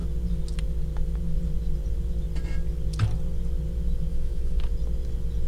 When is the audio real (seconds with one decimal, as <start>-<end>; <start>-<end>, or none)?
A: 0.0-4.1; 4.7-5.5